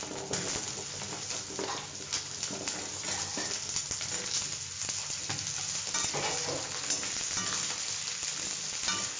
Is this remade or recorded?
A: recorded